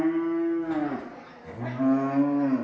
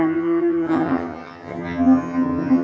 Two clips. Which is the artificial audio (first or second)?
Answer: second